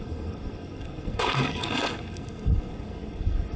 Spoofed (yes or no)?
yes